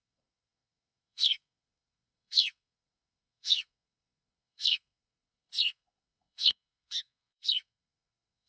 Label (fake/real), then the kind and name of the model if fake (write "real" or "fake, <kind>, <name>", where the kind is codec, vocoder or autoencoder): fake, codec, SNAC